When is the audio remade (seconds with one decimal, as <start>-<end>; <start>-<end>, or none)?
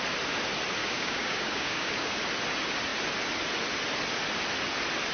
0.8-2.2